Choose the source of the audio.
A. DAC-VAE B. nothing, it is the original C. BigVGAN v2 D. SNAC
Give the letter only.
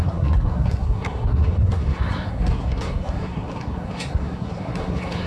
D